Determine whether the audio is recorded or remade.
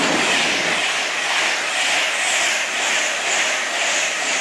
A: recorded